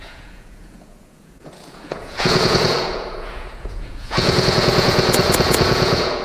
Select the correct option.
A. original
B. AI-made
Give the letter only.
B